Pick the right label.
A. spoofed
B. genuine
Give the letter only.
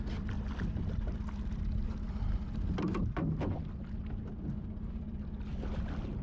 B